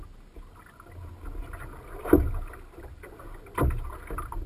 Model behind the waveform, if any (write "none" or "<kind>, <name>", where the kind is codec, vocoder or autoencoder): none